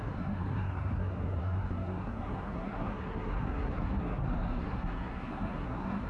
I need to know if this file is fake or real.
fake